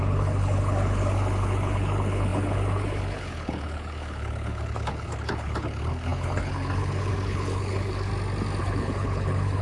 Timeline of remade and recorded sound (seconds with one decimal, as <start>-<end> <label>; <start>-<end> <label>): 0.0-8.1 remade; 8.1-8.6 recorded; 8.6-9.6 remade